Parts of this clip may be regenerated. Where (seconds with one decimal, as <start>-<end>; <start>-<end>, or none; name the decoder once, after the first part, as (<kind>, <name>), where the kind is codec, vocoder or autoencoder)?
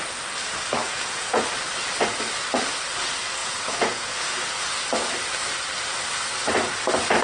0.8-1.4 (vocoder, Vocos); 3.4-4.6